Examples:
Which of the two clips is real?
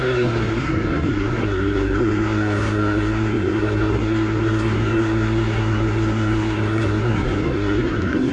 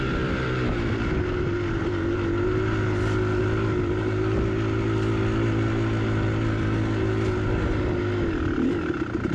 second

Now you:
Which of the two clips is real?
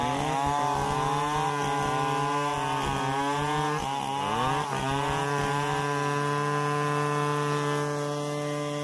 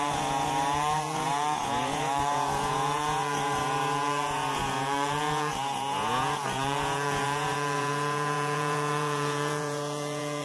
first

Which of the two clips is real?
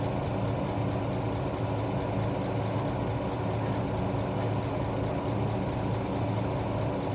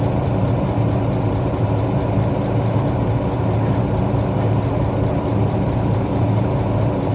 first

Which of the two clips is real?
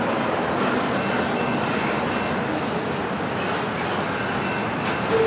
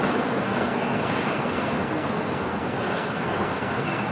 first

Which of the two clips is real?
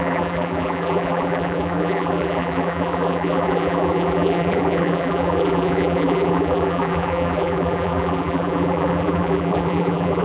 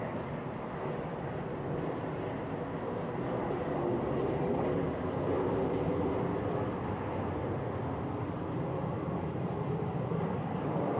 second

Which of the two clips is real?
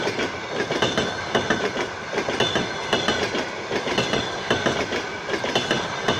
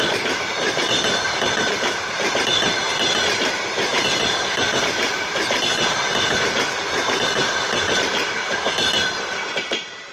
first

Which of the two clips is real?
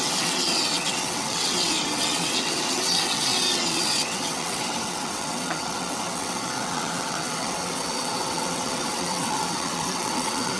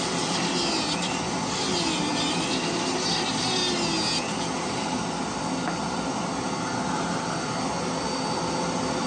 second